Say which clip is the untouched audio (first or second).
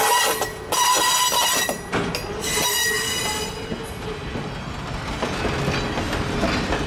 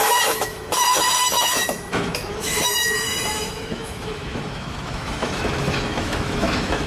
first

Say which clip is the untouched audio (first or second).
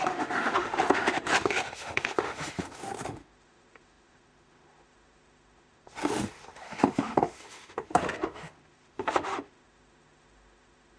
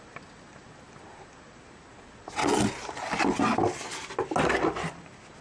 second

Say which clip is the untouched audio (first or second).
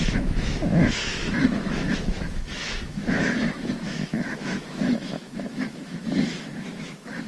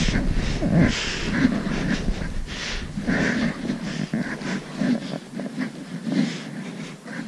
second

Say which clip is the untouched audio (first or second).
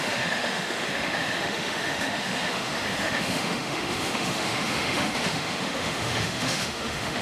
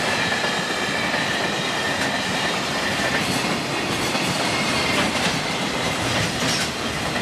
second